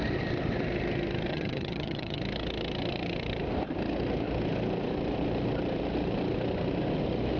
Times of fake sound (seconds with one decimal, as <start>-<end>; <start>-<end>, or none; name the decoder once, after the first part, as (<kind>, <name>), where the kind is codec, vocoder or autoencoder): 1.3-2.2 (vocoder, HiFi-GAN)